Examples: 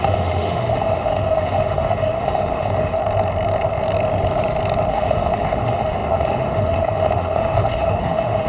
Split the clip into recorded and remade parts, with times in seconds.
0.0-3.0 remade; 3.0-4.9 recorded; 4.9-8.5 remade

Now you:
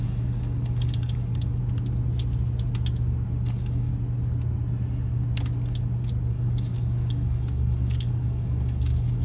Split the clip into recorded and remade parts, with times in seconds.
0.0-1.6 remade; 1.6-3.5 recorded; 3.5-3.9 remade; 3.9-6.3 recorded; 6.3-9.2 remade

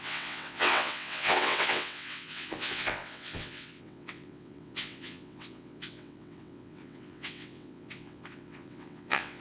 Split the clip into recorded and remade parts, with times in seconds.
0.0-9.4 remade

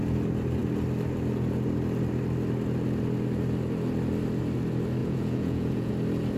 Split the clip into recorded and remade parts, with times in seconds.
0.0-5.0 recorded; 5.0-5.9 remade; 5.9-6.4 recorded

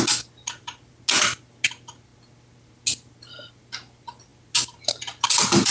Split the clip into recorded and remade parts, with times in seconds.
0.0-5.7 recorded